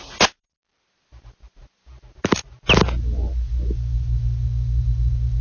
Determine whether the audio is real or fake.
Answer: real